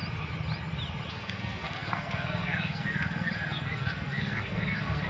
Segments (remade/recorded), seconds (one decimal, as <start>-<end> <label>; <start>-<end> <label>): 0.0-1.1 recorded; 1.1-5.1 remade